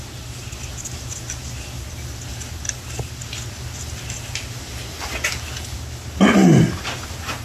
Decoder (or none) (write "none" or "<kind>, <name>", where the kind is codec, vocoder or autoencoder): none